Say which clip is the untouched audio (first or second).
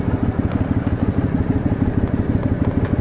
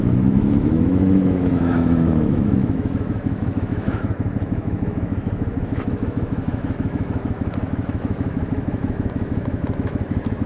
first